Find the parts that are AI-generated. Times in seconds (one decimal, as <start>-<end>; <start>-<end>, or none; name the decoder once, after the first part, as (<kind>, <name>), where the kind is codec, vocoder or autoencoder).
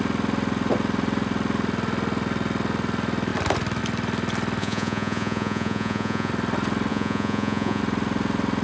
4.6-6.3 (vocoder, Vocos); 6.9-7.8